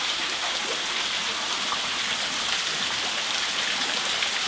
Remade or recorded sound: recorded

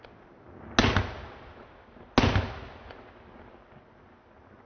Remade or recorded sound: recorded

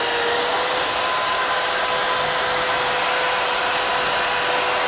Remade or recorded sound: recorded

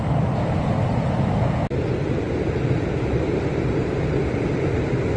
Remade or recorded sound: recorded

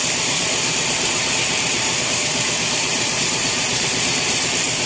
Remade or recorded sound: remade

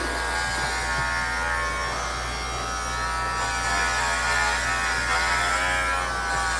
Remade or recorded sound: recorded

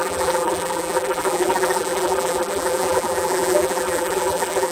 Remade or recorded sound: remade